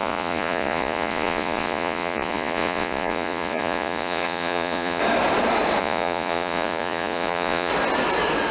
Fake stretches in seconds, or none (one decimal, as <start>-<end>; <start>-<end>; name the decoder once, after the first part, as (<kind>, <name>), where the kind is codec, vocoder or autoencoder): 0.0-5.0 (vocoder, Vocos); 5.8-7.7